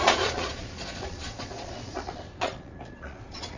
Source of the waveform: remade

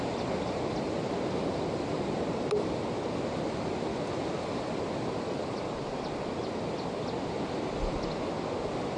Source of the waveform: recorded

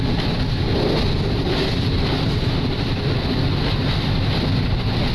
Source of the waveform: recorded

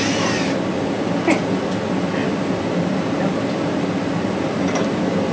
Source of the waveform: recorded